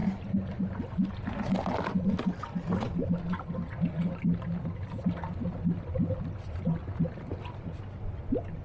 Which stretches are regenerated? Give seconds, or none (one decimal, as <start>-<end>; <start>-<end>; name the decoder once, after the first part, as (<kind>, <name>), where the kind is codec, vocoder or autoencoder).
7.3-8.2 (vocoder, BigVGAN v2)